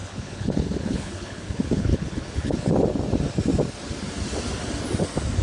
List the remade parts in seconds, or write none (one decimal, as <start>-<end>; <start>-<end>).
0.0-2.7